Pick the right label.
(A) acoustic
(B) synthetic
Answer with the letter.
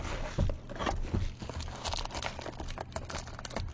A